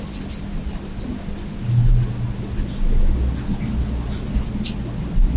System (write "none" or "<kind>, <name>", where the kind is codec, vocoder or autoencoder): none